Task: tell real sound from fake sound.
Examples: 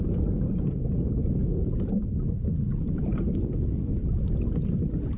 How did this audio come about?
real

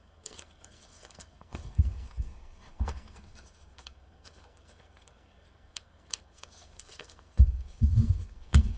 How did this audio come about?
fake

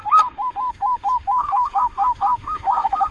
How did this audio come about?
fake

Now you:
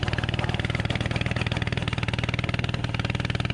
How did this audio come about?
real